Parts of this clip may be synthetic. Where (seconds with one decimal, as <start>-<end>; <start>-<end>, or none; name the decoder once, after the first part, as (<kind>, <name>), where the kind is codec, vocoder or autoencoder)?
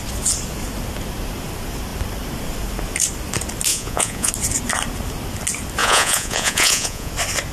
3.7-4.3 (vocoder, Vocos); 5.8-7.1